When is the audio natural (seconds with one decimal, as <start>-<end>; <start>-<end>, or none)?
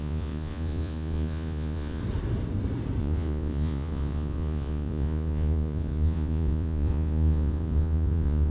2.0-3.0